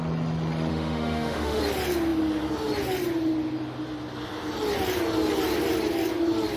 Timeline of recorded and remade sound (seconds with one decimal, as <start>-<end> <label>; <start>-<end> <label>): 0.0-0.7 recorded; 0.7-1.6 remade; 1.6-6.6 recorded